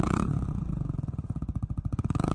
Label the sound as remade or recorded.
remade